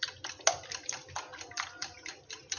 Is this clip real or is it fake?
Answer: real